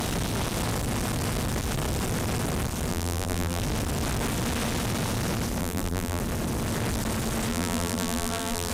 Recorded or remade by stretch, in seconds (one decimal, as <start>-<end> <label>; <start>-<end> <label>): 0.0-2.9 recorded; 2.9-3.6 remade; 3.6-5.6 recorded; 5.6-6.2 remade; 6.2-7.5 recorded; 7.5-8.7 remade